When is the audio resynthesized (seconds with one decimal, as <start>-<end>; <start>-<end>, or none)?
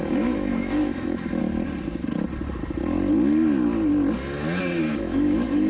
0.0-1.4; 4.8-5.7